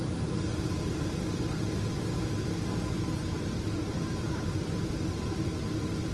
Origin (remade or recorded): recorded